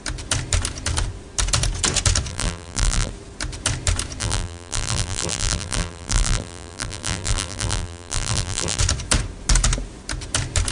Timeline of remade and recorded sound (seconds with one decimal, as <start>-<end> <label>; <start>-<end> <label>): 0.0-2.3 recorded; 2.3-3.1 remade; 3.1-4.2 recorded; 4.2-8.8 remade; 8.8-10.7 recorded